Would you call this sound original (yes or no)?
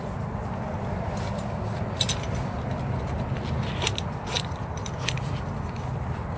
yes